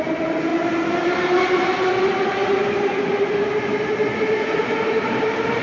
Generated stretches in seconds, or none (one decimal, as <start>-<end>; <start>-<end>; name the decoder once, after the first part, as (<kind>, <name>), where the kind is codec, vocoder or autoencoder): none